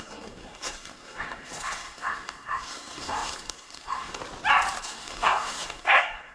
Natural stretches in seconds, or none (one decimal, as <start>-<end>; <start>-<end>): 4.2-4.8